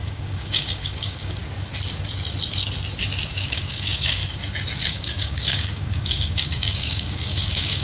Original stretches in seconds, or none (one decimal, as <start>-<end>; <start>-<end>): 1.4-3.3; 4.2-4.8